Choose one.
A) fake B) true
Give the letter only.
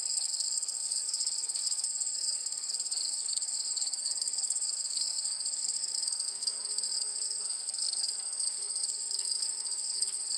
A